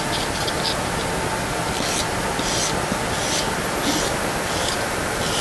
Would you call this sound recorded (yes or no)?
yes